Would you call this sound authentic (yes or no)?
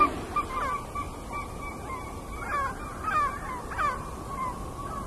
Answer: yes